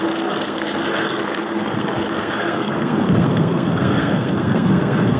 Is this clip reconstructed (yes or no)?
yes